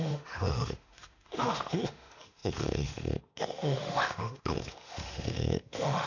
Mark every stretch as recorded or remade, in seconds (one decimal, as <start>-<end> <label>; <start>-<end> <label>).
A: 0.0-6.1 remade